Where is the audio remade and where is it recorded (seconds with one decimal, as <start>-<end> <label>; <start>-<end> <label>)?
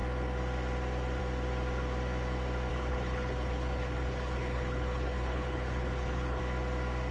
0.0-2.7 recorded; 2.7-6.4 remade; 6.4-7.1 recorded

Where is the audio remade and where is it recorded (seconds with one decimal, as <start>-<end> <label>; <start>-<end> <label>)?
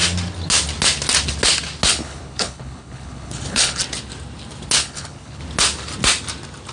0.0-1.9 recorded; 1.9-3.8 remade; 3.8-4.8 recorded; 4.8-5.4 remade; 5.4-6.7 recorded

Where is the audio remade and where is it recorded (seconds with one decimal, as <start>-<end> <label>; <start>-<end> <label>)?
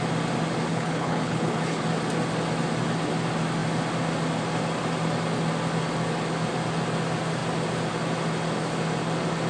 0.0-0.7 recorded; 0.7-1.8 remade; 1.8-9.5 recorded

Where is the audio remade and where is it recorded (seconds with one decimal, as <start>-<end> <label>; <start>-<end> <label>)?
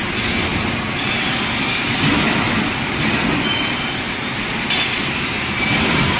0.0-6.2 recorded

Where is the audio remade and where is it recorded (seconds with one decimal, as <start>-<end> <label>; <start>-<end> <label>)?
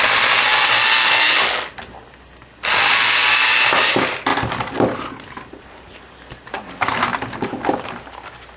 0.0-8.6 recorded